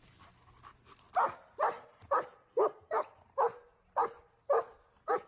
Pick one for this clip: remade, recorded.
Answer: recorded